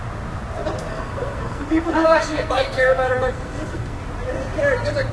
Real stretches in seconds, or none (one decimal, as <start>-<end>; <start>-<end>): 0.0-0.9; 4.0-5.1